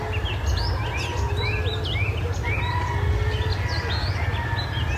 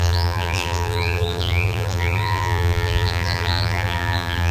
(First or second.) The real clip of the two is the first